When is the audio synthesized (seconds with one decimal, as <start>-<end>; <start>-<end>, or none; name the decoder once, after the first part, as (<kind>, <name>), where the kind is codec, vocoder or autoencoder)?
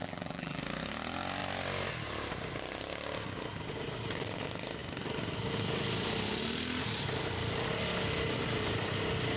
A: 0.0-0.6 (vocoder, BigVGAN v2)